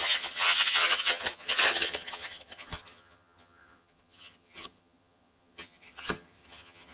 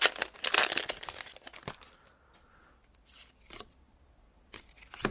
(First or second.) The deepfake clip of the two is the first